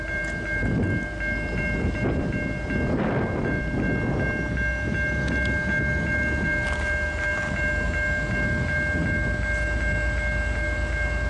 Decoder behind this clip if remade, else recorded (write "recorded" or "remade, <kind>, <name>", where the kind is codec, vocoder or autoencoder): recorded